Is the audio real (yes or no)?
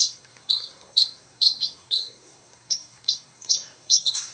no